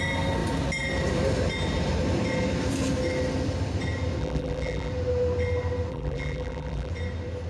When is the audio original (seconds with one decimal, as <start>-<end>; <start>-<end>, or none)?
0.0-4.2; 4.9-5.9; 6.9-7.5